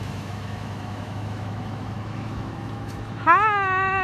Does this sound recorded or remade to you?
remade